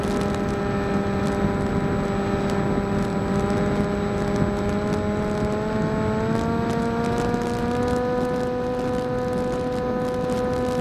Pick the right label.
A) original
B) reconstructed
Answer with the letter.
A